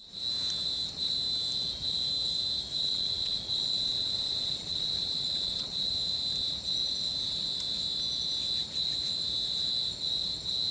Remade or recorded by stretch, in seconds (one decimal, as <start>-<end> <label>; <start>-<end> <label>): 0.0-2.8 recorded; 2.8-5.9 remade; 5.9-10.7 recorded

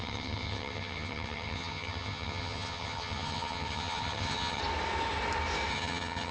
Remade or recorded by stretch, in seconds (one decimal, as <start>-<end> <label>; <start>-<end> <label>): 0.0-4.6 remade; 4.6-5.7 recorded; 5.7-6.3 remade

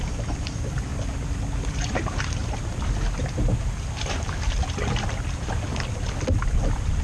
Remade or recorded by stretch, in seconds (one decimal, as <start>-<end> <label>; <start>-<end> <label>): 0.0-0.9 remade; 0.9-1.7 recorded; 1.7-2.4 remade; 2.4-6.6 recorded; 6.6-7.0 remade